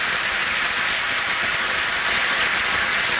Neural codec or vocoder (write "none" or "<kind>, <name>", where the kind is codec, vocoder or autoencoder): none